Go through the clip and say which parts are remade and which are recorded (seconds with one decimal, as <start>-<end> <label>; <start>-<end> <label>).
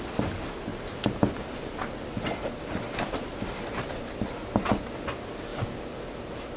0.0-0.7 recorded; 0.7-4.7 remade; 4.7-6.6 recorded